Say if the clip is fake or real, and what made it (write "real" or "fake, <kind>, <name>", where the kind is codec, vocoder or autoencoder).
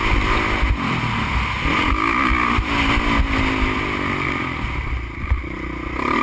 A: real